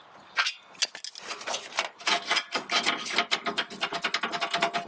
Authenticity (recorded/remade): recorded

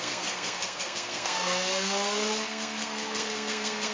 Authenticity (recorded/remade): remade